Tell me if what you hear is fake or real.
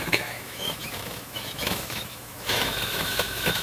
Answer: fake